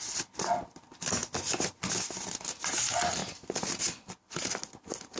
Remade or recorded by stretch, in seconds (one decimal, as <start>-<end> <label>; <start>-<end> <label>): 0.0-5.2 recorded